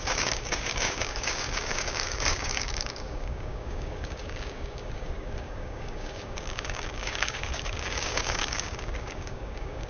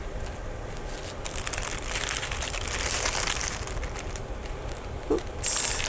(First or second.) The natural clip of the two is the second